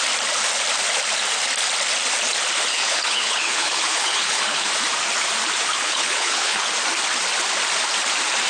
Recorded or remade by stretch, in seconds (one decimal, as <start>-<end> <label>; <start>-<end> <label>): 0.0-2.7 recorded; 2.7-4.7 remade; 4.7-5.7 recorded; 5.7-6.7 remade; 6.7-8.5 recorded